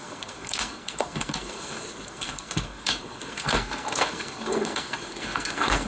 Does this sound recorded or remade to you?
remade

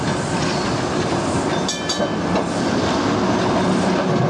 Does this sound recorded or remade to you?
recorded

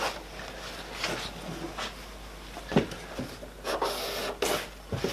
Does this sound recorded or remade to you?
recorded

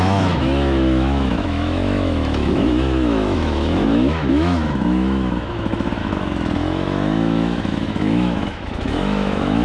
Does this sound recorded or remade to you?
remade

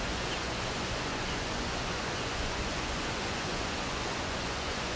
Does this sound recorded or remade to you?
remade